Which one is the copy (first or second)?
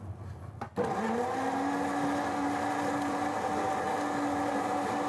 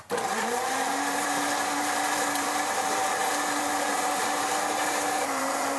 second